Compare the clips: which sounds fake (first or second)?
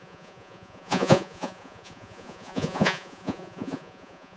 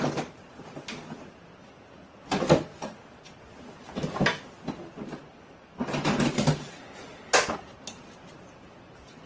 first